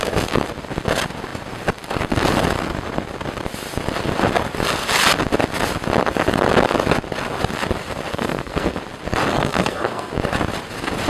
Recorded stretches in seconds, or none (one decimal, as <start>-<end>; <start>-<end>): 0.0-8.1; 8.8-9.3; 10.1-11.1